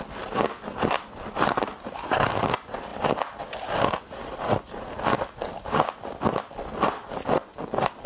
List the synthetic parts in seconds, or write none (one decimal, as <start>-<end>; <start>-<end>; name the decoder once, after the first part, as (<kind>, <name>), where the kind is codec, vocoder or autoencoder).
none